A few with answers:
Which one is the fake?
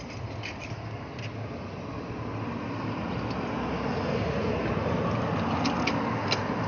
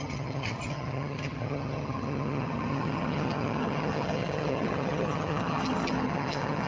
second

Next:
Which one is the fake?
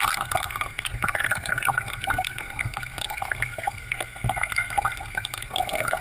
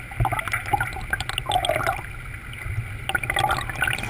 first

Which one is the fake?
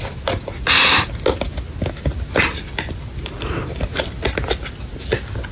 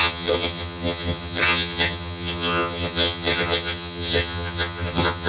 second